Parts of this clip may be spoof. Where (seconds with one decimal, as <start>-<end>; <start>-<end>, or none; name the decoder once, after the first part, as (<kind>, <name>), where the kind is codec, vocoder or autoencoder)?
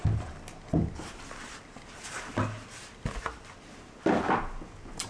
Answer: none